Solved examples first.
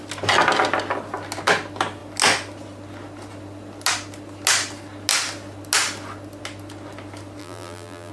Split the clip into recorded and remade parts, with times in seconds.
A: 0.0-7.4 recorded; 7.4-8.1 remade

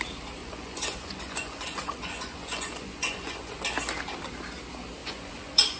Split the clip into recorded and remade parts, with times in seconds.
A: 0.0-0.4 recorded; 0.4-3.6 remade; 3.6-5.0 recorded; 5.0-5.8 remade

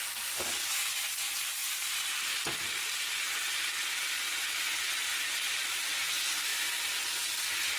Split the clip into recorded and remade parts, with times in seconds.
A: 0.0-5.1 recorded; 5.1-5.7 remade; 5.7-6.5 recorded; 6.5-7.2 remade; 7.2-7.8 recorded

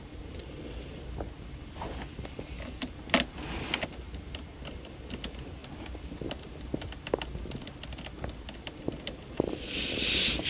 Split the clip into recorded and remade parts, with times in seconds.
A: 0.0-10.5 recorded

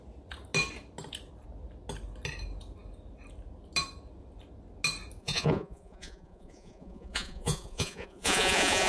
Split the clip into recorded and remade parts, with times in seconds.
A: 0.0-5.2 recorded; 5.2-8.9 remade